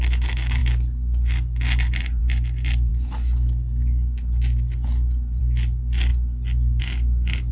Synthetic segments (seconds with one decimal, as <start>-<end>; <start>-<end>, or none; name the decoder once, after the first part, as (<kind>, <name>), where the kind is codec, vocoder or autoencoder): none